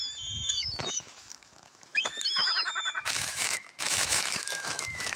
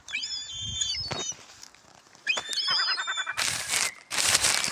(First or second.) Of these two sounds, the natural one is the second